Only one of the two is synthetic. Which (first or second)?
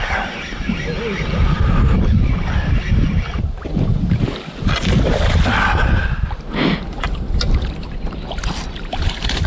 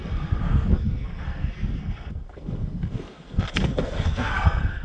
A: second